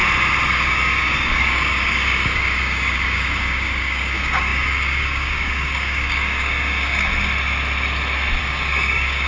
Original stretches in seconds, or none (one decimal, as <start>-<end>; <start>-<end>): 0.0-0.5; 7.1-8.4